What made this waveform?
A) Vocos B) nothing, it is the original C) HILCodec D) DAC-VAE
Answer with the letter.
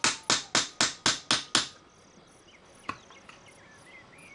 B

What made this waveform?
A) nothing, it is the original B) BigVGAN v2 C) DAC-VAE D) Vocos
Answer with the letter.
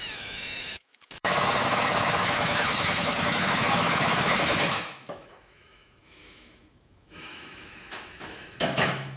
C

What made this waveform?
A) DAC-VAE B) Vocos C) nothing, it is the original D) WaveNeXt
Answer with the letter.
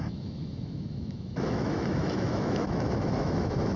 A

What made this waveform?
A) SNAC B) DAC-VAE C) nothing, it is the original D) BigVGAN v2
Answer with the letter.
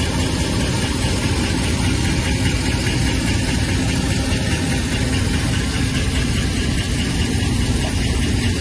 C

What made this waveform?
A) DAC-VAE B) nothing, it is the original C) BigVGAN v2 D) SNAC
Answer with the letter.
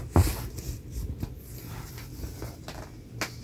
B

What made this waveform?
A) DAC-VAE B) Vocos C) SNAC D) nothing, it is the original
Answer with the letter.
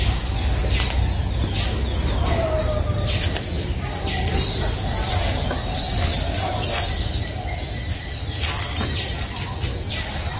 D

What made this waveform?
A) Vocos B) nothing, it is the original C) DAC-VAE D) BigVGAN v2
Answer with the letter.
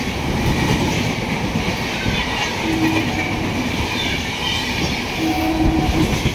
B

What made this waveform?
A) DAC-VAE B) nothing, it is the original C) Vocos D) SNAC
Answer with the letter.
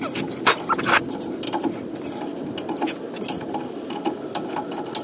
B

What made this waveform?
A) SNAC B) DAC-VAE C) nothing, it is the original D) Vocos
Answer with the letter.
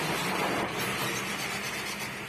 C